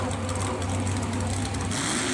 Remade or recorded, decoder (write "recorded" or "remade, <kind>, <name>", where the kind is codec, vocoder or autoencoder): recorded